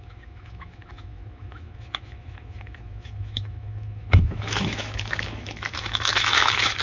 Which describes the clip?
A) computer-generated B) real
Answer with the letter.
A